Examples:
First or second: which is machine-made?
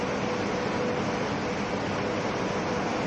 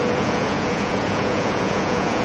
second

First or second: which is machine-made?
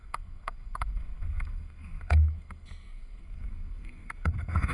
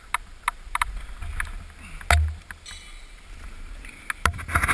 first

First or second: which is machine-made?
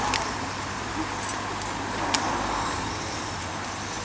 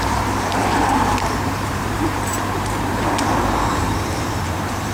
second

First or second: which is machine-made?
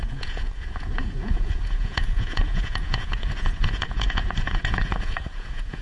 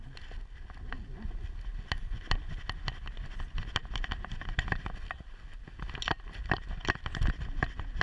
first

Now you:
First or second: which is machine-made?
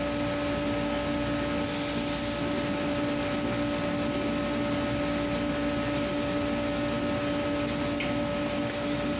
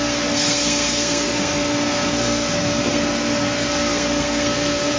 second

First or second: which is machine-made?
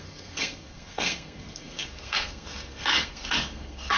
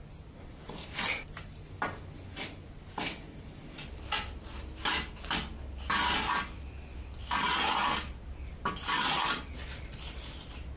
first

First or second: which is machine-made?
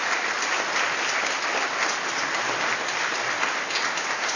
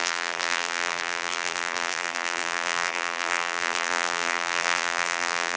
second